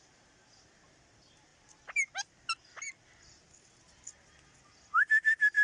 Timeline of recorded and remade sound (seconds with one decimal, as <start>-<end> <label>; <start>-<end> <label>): 0.0-5.6 recorded